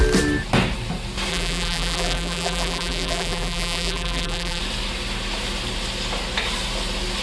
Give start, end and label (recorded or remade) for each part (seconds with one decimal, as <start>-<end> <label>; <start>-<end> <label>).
0.0-1.3 recorded; 1.3-4.6 remade; 4.6-7.2 recorded